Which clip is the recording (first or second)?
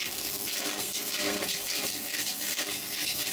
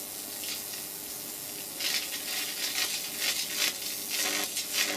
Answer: second